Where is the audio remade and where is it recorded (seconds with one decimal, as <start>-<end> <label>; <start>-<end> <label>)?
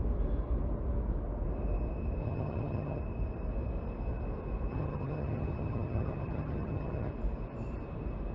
0.0-2.2 recorded; 2.2-3.0 remade; 3.0-4.7 recorded; 4.7-7.1 remade; 7.1-8.3 recorded